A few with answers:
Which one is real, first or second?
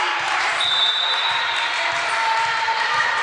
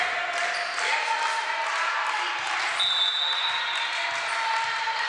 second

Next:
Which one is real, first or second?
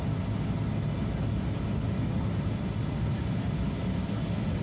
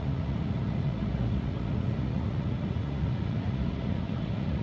first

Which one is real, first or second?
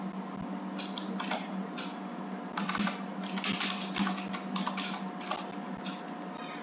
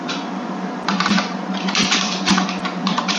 first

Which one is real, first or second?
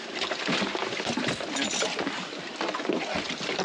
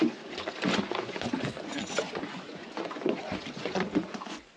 first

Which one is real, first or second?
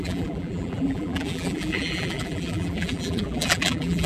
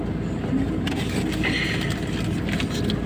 second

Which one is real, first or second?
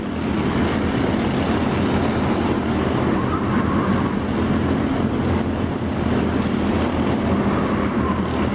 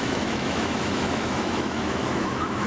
first